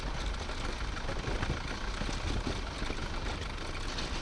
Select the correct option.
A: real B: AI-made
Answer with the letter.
A